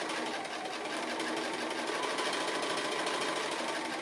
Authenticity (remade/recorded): recorded